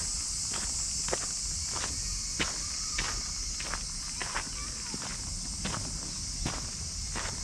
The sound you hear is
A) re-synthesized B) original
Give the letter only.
B